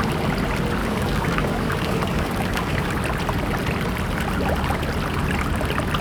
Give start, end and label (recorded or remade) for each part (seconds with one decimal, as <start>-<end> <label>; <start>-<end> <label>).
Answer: 0.0-0.8 recorded; 0.8-2.9 remade; 2.9-6.0 recorded